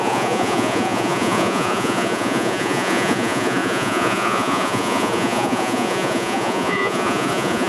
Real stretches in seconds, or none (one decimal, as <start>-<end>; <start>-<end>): none